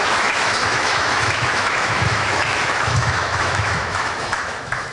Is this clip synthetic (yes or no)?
yes